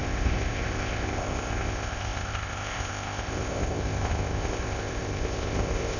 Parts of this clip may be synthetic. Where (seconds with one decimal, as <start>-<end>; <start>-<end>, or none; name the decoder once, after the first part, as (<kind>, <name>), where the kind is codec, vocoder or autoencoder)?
0.0-6.0 (codec, ZipCodec)

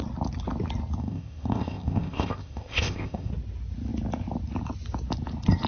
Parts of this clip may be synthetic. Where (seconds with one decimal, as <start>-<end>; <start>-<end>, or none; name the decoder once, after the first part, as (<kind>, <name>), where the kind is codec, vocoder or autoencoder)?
1.0-3.3 (codec, ZipCodec)

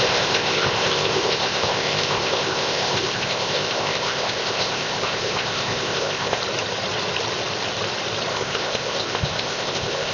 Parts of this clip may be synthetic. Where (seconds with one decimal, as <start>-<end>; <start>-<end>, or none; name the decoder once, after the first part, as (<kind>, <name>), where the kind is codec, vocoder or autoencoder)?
0.0-6.4 (codec, ZipCodec); 8.3-10.1

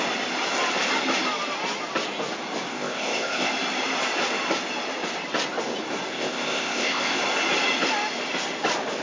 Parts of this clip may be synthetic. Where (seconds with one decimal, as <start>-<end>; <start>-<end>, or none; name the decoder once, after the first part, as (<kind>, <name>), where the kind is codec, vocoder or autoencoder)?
2.7-3.5 (codec, ZipCodec); 6.1-7.2